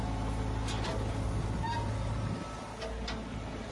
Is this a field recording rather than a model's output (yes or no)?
yes